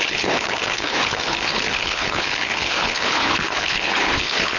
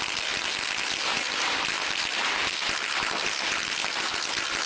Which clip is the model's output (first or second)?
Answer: first